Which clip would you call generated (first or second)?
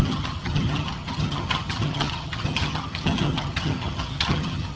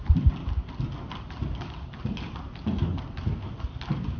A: first